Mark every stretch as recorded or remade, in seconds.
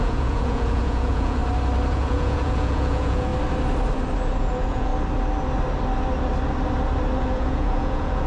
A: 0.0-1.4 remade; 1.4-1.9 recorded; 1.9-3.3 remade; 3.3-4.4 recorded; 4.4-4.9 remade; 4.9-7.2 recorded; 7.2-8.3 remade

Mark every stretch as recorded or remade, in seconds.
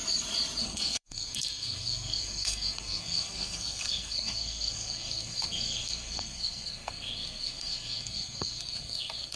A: 0.0-0.6 recorded; 0.6-9.4 remade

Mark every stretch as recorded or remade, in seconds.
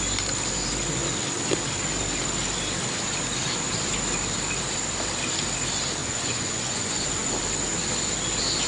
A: 0.0-6.0 recorded; 6.0-7.3 remade; 7.3-8.7 recorded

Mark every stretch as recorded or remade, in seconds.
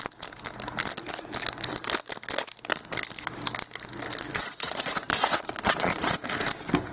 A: 0.0-4.3 recorded; 4.3-6.2 remade; 6.2-6.9 recorded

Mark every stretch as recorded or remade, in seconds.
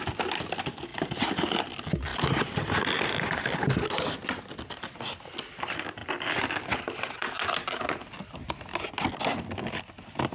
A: 0.0-0.9 recorded; 0.9-1.6 remade; 1.6-2.1 recorded; 2.1-4.1 remade; 4.1-10.3 recorded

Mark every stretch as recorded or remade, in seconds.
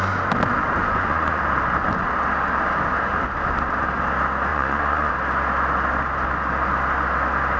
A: 0.0-0.8 recorded; 0.8-1.4 remade; 1.4-4.5 recorded; 4.5-5.1 remade; 5.1-7.6 recorded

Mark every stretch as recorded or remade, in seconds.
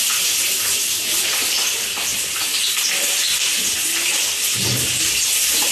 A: 0.0-5.7 recorded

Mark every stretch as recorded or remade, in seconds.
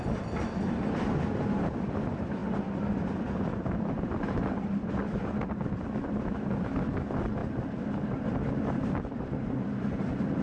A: 0.0-10.4 recorded